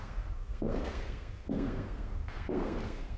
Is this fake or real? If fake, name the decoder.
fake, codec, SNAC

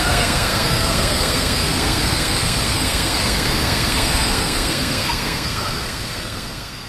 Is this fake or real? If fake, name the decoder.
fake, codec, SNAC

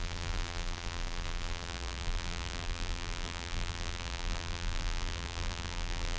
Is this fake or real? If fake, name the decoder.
fake, vocoder, BigVGAN v2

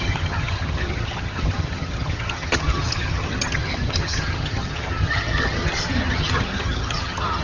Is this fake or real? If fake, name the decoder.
fake, vocoder, HiFi-GAN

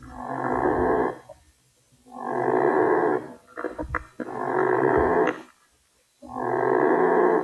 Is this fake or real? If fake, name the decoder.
real